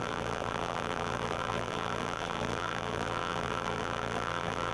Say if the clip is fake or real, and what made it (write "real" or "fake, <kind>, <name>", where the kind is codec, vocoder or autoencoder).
fake, vocoder, BigVGAN v2